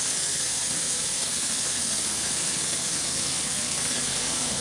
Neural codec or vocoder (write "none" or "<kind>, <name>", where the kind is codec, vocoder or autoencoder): codec, SNAC